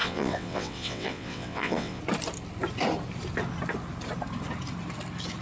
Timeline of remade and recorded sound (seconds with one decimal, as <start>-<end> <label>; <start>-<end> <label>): 0.0-2.0 remade; 2.0-5.4 recorded